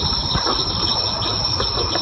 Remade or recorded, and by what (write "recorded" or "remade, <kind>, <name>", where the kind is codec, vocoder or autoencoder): recorded